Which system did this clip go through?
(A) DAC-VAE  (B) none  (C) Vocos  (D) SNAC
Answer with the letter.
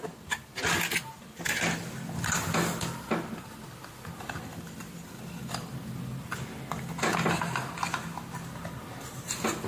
B